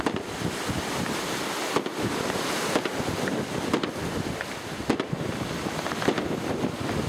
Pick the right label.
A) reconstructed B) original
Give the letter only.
B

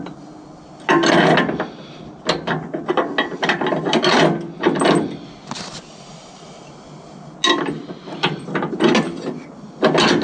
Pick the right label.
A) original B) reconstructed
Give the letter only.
A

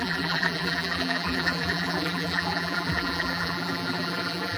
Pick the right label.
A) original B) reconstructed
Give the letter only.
B